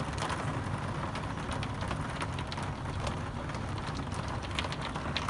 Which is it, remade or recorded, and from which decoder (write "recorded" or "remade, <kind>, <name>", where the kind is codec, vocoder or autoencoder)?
recorded